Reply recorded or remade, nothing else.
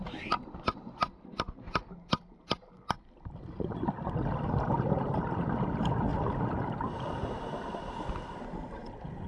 remade